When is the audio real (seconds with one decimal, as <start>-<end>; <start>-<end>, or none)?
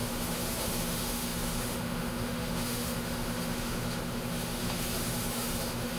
none